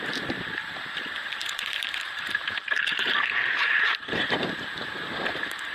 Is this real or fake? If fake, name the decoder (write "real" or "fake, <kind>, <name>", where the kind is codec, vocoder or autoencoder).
fake, vocoder, BigVGAN v2